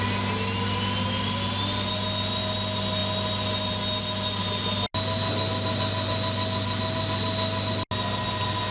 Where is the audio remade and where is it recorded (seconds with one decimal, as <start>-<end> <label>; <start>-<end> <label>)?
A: 0.0-8.7 recorded